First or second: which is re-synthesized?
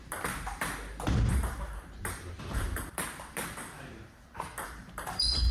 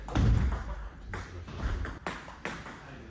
first